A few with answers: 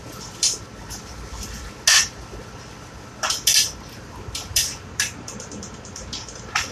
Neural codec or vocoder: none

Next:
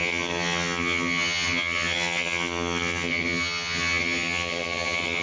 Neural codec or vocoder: vocoder, HiFi-GAN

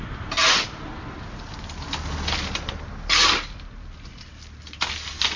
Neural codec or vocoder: none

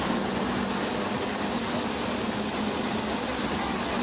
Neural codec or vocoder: none